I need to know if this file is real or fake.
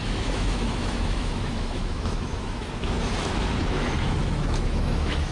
fake